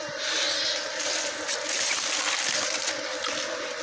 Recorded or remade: recorded